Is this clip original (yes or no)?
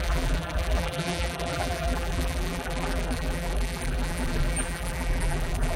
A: no